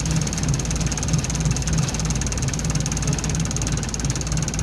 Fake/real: real